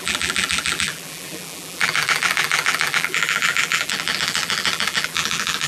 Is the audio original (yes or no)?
no